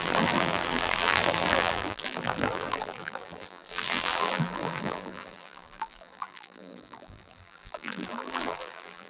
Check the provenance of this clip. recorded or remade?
remade